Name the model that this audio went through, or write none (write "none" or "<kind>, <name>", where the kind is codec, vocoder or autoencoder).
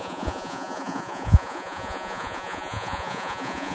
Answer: vocoder, Vocos